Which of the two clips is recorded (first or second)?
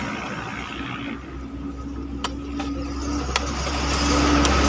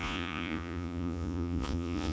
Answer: first